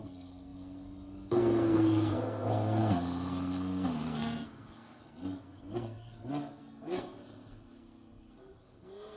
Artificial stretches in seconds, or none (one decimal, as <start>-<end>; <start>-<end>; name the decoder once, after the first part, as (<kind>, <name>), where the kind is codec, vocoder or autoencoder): 0.0-9.2 (codec, SNAC)

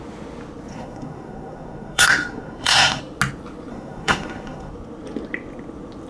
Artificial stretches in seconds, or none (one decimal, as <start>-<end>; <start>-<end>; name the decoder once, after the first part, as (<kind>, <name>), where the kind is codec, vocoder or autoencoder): 0.7-3.0 (codec, SNAC); 3.7-4.7

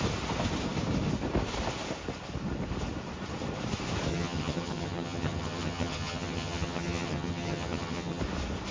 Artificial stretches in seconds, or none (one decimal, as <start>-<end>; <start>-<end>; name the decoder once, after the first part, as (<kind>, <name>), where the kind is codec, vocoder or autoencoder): 4.1-8.2 (vocoder, HiFi-GAN)

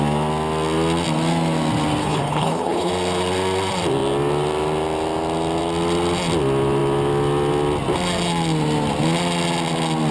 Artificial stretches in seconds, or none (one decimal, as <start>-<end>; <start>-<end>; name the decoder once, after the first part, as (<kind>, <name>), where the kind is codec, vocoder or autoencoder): 2.0-2.9 (codec, HILCodec)

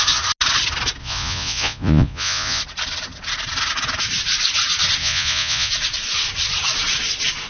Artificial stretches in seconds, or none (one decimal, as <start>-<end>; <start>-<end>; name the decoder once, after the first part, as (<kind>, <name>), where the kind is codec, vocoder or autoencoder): 1.0-2.6 (vocoder, Vocos); 5.0-5.7

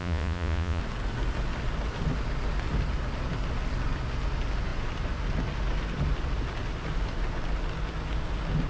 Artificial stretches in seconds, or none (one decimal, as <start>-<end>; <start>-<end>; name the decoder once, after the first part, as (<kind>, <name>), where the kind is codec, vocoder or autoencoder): 0.0-0.8 (vocoder, Vocos)

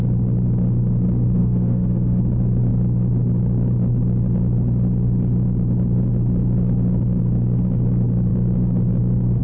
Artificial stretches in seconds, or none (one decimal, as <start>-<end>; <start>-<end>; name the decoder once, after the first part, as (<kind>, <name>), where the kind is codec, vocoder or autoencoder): 1.4-2.2 (autoencoder, DAC-VAE)